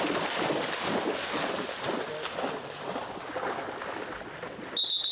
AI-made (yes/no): no